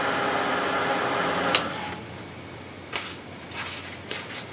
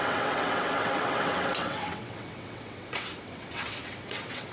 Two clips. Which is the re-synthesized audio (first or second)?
second